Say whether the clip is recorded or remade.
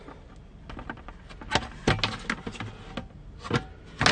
recorded